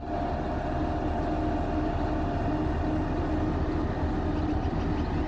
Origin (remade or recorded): recorded